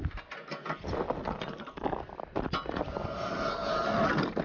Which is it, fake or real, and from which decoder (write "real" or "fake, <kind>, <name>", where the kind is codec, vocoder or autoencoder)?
real